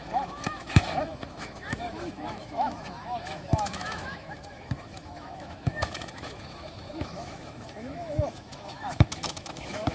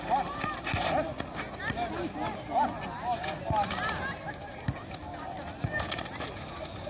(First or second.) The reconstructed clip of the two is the first